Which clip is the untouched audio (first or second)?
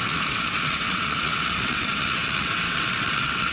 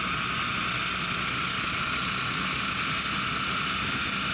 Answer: second